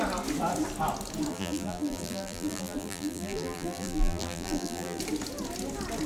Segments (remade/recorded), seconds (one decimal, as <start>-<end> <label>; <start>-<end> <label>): 0.0-1.3 recorded; 1.3-5.0 remade; 5.0-6.1 recorded

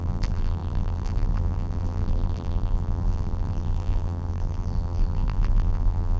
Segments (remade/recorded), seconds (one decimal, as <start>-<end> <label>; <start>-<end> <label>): 0.0-6.2 remade

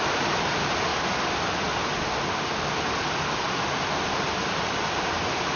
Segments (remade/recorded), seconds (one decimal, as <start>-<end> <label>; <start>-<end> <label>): 0.0-0.9 remade; 0.9-4.3 recorded; 4.3-5.6 remade

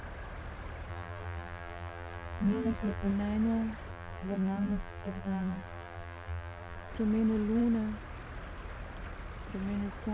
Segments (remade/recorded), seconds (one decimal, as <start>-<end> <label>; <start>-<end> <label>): 0.0-0.9 recorded; 0.9-3.1 remade; 3.1-3.9 recorded; 3.9-6.9 remade; 6.9-10.1 recorded

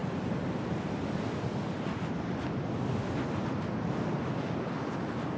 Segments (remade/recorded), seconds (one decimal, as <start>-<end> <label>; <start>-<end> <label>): 0.0-2.0 remade; 2.0-5.4 recorded